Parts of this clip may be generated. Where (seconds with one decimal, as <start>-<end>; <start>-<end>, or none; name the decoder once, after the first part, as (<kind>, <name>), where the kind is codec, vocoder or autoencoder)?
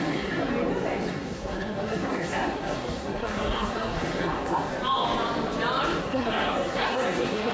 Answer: 0.0-0.5 (codec, SNAC); 1.1-4.7; 6.0-7.5